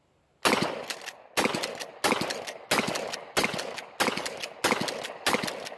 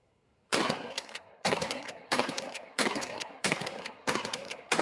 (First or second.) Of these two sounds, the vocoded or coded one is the second